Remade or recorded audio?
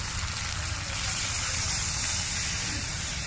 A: recorded